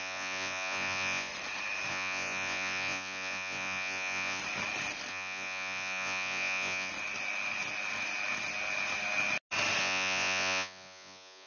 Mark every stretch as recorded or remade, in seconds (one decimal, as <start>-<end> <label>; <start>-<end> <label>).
0.0-1.3 remade; 1.3-1.9 recorded; 1.9-4.4 remade; 4.4-5.1 recorded; 5.1-6.9 remade; 6.9-9.8 recorded; 9.8-11.5 remade